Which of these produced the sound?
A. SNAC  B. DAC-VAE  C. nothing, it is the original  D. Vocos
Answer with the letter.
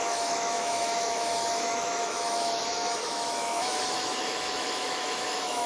B